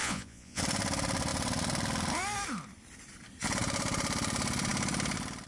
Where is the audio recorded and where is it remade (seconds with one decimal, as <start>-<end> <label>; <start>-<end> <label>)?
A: 0.0-0.6 remade; 0.6-5.5 recorded